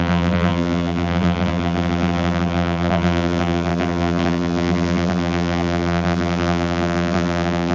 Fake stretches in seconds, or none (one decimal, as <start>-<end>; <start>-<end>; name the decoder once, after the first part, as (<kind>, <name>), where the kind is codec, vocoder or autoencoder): 0.0-7.7 (vocoder, BigVGAN v2)